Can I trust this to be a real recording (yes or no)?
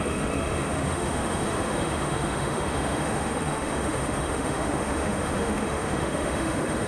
no